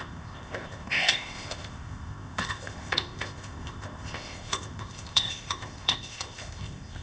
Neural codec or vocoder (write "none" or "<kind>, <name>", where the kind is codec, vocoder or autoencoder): codec, ZipCodec